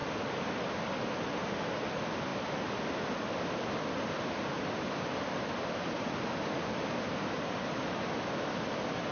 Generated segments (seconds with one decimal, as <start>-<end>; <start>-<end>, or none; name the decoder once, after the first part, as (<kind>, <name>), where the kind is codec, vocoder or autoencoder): none